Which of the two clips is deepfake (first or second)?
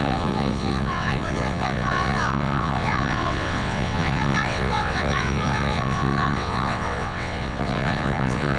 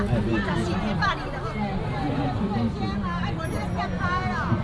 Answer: first